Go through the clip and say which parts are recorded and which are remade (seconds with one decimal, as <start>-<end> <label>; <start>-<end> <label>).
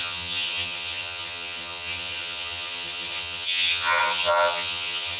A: 0.0-5.2 remade